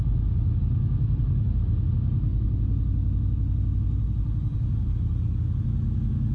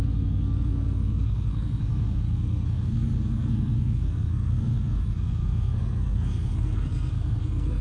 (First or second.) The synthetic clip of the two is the second